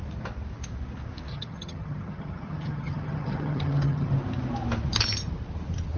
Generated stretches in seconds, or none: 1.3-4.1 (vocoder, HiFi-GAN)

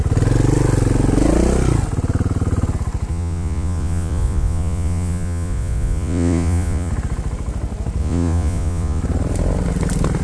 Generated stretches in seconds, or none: 3.1-6.9 (vocoder, Vocos); 8.0-9.0

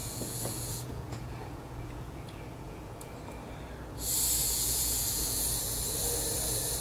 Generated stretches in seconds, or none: 0.0-3.1 (vocoder, Vocos); 4.4-5.8

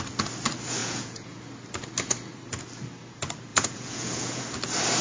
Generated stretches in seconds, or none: 0.8-1.4 (vocoder, Vocos); 3.5-4.4

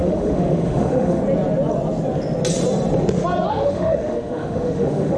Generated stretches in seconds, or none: 0.0-1.2 (autoencoder, DAC-VAE); 3.5-5.2

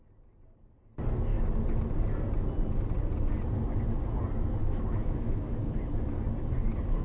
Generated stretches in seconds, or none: 4.6-5.9 (autoencoder, DAC-VAE)

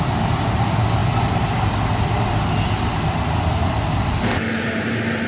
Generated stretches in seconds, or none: none